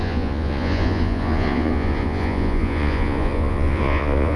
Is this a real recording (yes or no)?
no